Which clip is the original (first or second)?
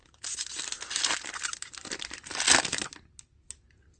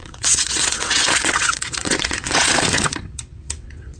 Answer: first